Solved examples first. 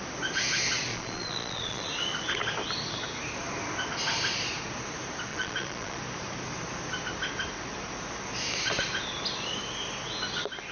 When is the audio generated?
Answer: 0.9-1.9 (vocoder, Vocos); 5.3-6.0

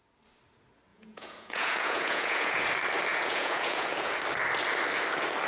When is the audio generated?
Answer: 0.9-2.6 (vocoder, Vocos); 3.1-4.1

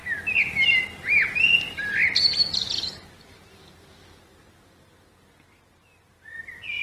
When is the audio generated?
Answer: none

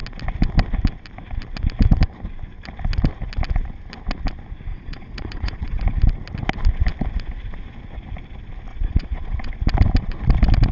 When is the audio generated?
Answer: 4.7-5.8 (vocoder, Vocos); 8.7-9.5

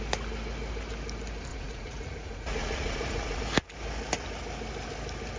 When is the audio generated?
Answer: 1.5-3.4 (vocoder, Vocos)

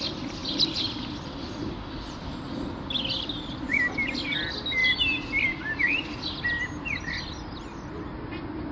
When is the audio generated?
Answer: none

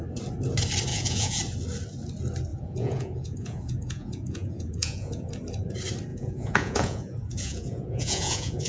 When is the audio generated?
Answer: 0.9-1.4 (vocoder, Vocos); 2.5-5.3; 6.1-8.7